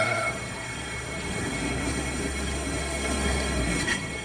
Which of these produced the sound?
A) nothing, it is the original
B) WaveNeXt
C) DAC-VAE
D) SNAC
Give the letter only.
D